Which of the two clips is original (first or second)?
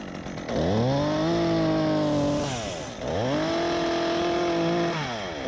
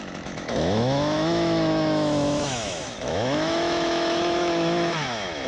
first